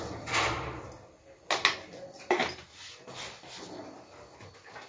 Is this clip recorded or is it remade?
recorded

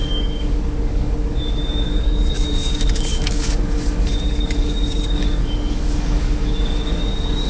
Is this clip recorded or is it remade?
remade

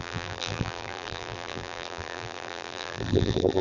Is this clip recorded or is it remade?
remade